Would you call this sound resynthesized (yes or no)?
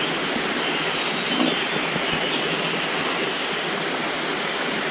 no